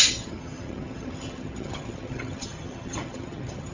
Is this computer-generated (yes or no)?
yes